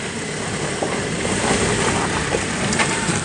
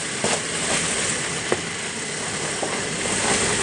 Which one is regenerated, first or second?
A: first